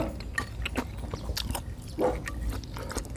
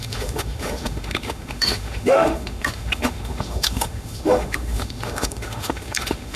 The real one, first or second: first